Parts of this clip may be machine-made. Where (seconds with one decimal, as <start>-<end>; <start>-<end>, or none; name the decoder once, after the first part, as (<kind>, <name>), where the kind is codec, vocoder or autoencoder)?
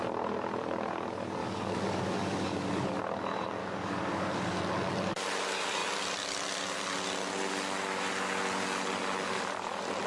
1.4-3.0 (codec, DAC); 3.6-4.6